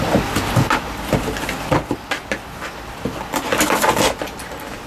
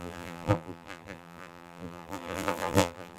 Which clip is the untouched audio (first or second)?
first